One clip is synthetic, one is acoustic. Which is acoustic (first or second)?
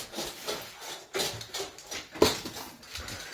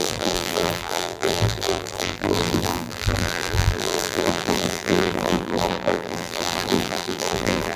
first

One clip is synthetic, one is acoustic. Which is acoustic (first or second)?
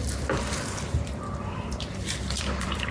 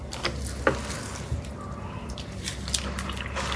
second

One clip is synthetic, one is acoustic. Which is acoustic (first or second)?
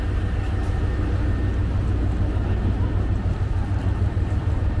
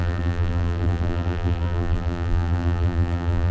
first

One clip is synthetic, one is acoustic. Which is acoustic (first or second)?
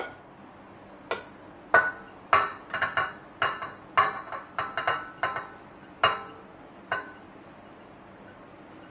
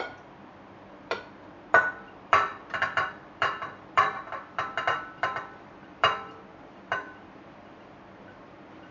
first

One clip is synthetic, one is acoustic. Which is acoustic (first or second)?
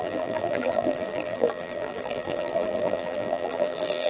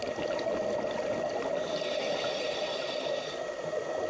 second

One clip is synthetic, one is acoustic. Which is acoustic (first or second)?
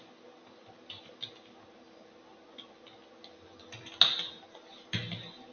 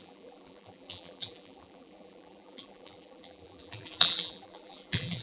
first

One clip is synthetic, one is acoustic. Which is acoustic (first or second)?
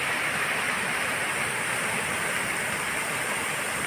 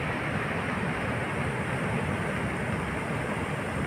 second